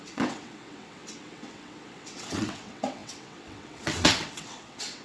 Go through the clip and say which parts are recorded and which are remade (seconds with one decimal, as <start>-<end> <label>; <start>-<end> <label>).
0.0-5.0 remade